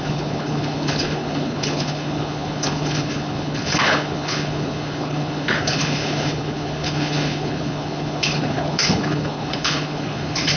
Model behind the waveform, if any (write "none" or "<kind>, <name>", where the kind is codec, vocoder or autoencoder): codec, HILCodec